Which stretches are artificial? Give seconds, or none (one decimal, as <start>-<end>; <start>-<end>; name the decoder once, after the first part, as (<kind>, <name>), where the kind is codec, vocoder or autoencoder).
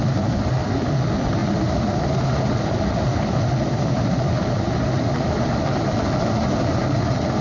none